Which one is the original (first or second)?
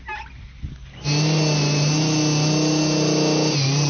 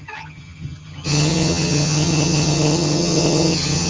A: first